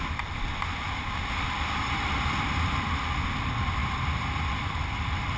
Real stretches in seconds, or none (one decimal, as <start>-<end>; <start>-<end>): 0.0-5.4